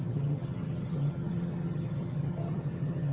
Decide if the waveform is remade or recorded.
remade